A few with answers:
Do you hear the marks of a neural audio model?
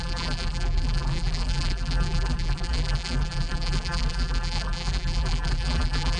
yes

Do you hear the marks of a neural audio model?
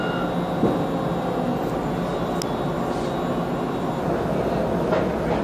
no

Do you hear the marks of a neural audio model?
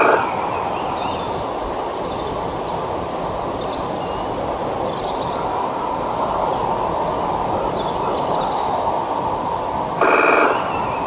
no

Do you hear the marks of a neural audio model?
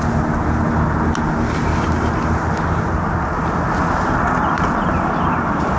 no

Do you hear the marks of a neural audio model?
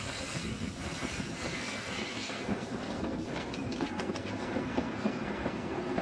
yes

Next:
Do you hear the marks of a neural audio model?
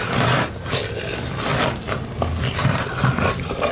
no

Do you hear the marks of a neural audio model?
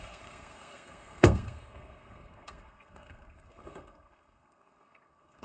yes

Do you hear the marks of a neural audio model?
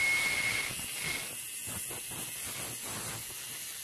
no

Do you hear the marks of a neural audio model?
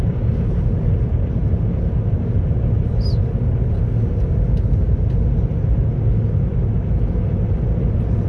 no